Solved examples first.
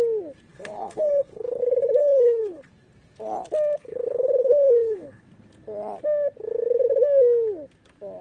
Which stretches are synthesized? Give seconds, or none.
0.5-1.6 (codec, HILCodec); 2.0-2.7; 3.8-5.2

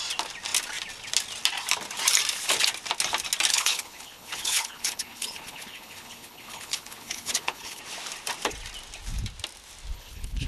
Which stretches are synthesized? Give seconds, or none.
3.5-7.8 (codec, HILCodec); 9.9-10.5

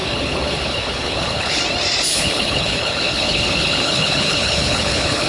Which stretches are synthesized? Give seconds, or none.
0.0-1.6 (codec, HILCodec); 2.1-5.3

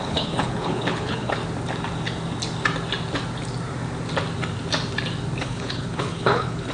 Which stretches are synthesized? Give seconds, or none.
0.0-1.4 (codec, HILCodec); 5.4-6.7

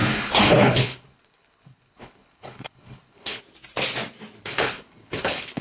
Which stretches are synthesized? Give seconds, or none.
0.0-3.4 (codec, HILCodec); 4.4-5.6